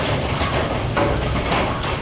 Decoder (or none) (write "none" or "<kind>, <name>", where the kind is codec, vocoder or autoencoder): none